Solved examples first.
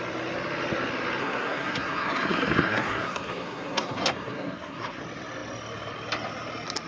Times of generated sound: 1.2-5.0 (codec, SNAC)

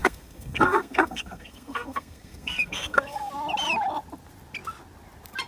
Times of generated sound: 0.0-3.3 (codec, SNAC)

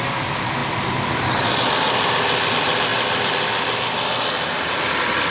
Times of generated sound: none